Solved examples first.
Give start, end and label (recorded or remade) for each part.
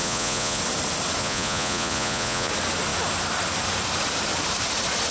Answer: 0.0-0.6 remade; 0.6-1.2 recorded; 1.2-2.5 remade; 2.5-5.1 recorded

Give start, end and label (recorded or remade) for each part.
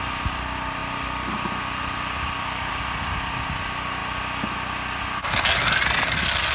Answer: 0.0-6.5 recorded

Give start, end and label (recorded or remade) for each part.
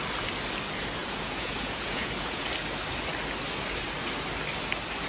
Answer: 0.0-1.0 recorded; 1.0-2.5 remade; 2.5-5.1 recorded